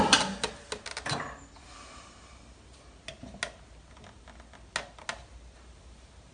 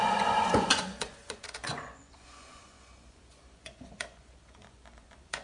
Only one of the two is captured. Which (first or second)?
first